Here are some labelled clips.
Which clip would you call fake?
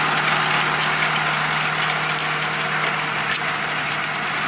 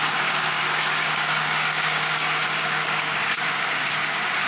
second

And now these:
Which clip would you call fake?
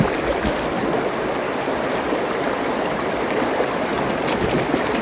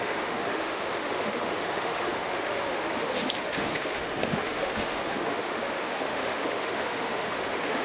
second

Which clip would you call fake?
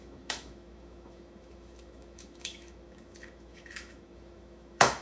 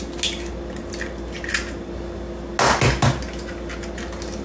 first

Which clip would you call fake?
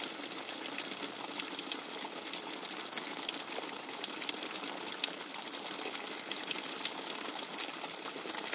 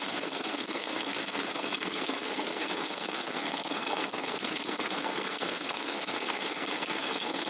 second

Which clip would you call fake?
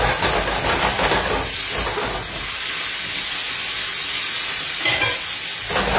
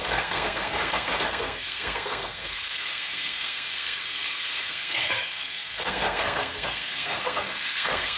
second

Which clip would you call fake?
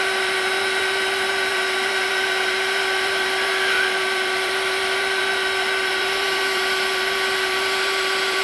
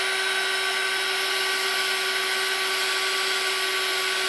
first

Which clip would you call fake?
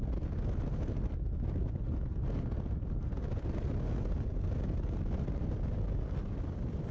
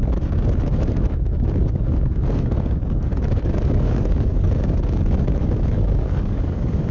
second